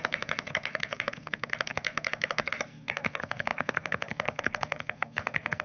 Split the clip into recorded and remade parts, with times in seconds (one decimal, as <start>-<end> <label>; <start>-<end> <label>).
0.0-5.6 remade